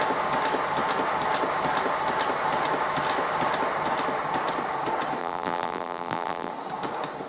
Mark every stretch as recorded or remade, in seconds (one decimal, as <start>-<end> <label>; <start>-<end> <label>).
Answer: 0.0-5.2 recorded; 5.2-6.5 remade; 6.5-7.3 recorded